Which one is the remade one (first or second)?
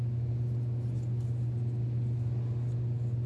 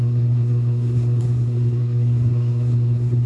second